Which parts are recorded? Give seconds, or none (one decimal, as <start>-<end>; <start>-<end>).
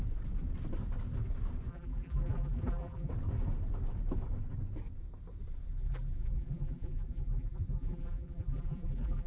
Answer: 0.0-1.7; 3.1-5.7